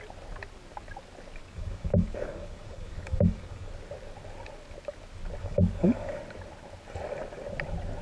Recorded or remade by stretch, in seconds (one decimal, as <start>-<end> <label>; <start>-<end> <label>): 0.0-1.4 recorded; 1.4-3.7 remade; 3.7-5.4 recorded; 5.4-6.2 remade; 6.2-8.0 recorded